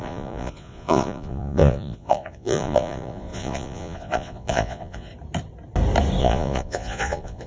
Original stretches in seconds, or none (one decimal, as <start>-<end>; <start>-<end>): 5.1-6.2